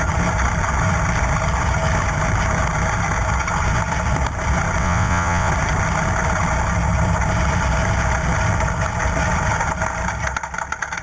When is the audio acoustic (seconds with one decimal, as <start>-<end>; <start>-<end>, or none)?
0.0-4.8; 5.5-11.0